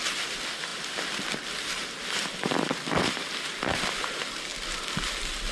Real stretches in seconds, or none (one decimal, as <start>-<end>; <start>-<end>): 0.0-5.5